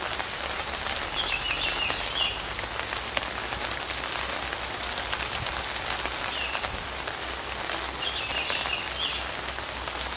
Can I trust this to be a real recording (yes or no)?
yes